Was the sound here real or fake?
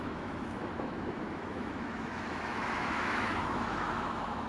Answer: fake